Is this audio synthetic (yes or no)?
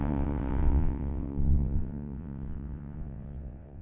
yes